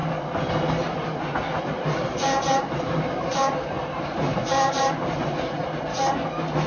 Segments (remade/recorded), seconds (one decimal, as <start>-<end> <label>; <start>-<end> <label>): 0.0-1.6 recorded; 1.6-5.9 remade; 5.9-6.7 recorded